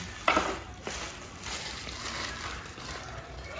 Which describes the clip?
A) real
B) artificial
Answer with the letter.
A